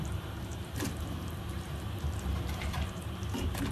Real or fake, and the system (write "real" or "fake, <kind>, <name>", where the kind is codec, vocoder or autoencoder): fake, vocoder, BigVGAN v2